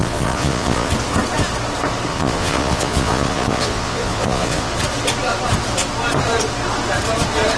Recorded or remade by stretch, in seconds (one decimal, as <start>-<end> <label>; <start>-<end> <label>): 0.0-0.9 remade; 0.9-2.1 recorded; 2.1-4.7 remade; 4.7-7.6 recorded